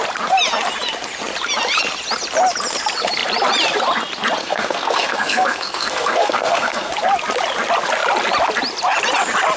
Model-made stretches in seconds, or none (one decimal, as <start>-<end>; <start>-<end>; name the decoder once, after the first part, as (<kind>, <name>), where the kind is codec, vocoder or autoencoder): 4.4-6.9 (codec, SNAC)